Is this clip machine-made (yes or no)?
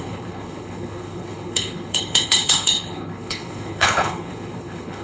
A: yes